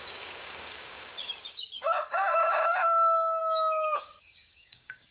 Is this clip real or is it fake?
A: fake